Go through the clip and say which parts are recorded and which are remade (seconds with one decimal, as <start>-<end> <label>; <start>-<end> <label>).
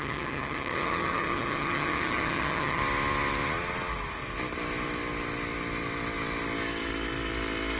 0.0-2.8 remade; 2.8-7.8 recorded